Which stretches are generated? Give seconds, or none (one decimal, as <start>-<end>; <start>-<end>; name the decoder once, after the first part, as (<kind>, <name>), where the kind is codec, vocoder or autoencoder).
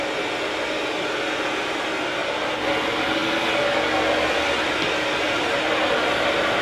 none